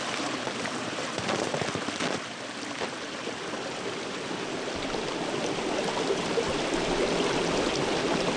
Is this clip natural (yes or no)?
yes